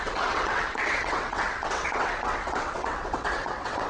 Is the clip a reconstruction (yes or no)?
yes